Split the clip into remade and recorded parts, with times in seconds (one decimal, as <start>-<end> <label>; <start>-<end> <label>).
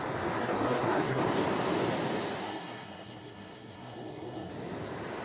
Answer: 0.0-0.4 recorded; 0.4-1.2 remade; 1.2-2.4 recorded; 2.4-4.5 remade; 4.5-5.2 recorded